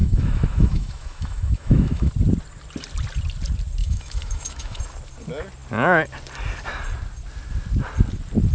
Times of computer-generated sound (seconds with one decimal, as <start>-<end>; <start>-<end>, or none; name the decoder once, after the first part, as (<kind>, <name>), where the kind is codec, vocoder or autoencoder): 0.0-2.1 (autoencoder, DAC-VAE); 3.8-4.8